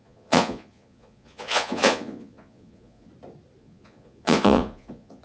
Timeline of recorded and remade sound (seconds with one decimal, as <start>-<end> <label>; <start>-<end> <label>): 0.0-3.1 remade; 3.1-3.6 recorded; 3.6-5.2 remade